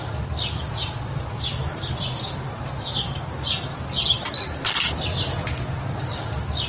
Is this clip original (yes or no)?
yes